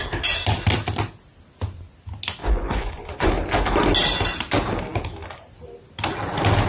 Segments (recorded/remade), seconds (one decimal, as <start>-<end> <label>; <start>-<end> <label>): 0.0-2.4 recorded; 2.4-3.3 remade; 3.3-6.7 recorded